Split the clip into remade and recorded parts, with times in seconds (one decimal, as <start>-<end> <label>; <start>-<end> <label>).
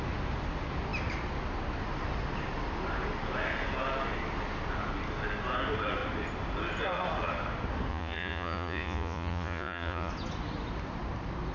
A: 0.0-7.9 recorded; 7.9-10.1 remade; 10.1-11.5 recorded